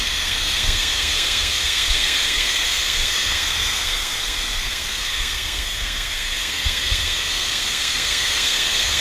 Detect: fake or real fake